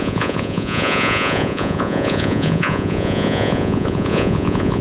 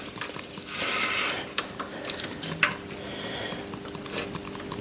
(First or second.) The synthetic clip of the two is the first